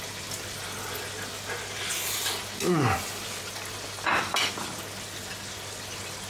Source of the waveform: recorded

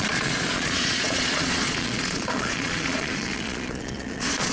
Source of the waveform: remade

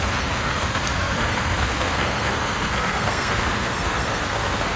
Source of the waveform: remade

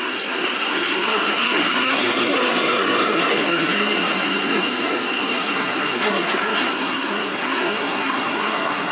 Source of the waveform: remade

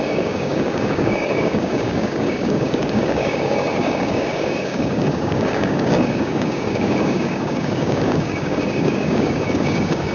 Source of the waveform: remade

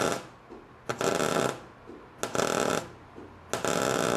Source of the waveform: recorded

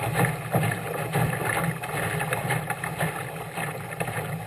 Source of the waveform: recorded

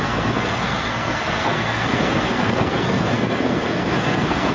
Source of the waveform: remade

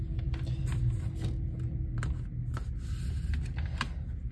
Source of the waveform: recorded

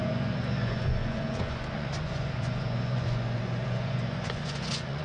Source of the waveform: remade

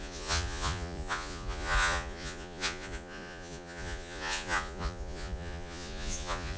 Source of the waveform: remade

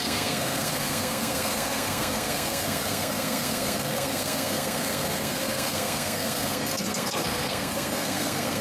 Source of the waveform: remade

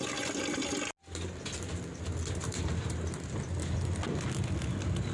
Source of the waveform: recorded